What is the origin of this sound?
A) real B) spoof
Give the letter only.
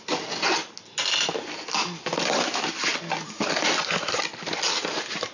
A